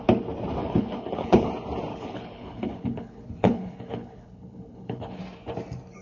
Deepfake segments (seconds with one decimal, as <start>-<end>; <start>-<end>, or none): 0.6-1.5; 1.9-5.2